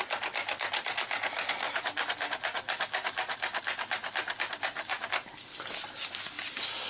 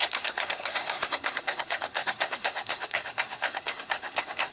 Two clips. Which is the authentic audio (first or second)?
first